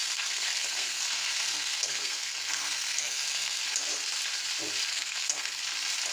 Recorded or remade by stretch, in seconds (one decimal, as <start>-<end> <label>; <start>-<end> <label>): 0.0-3.6 remade; 3.6-4.9 recorded; 4.9-5.6 remade; 5.6-6.1 recorded